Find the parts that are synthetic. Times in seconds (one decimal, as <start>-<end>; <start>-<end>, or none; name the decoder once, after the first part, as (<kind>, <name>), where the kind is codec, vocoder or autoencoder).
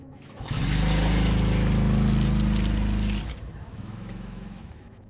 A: 0.0-0.6 (autoencoder, DAC-VAE); 3.7-5.1